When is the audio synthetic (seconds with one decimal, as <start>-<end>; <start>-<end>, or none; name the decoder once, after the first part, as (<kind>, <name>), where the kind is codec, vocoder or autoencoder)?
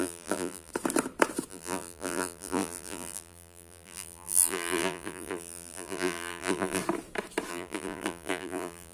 0.0-0.7 (vocoder, BigVGAN v2); 1.5-6.8; 7.5-8.9